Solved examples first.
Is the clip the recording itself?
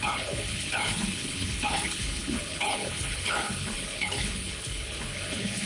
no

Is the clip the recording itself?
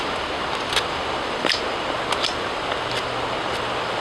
yes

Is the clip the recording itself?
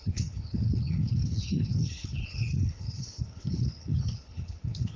no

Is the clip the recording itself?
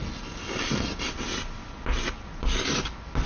yes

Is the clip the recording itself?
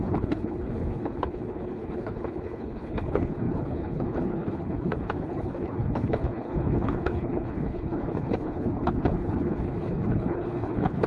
no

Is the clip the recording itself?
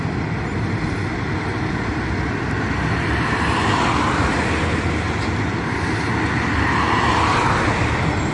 yes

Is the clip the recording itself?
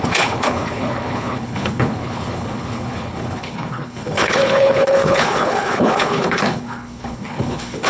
no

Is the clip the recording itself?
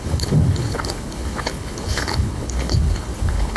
no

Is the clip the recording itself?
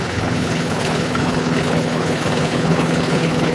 no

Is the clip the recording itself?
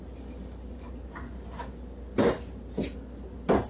yes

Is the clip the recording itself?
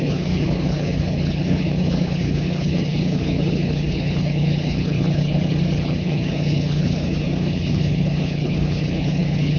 no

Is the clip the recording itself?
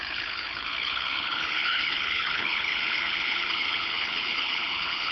no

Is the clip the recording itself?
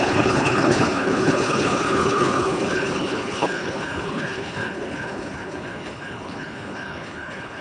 no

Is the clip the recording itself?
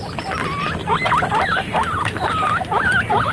yes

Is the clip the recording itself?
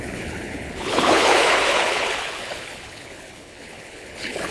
no